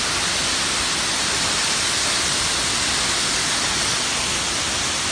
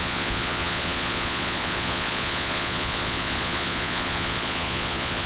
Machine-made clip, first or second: second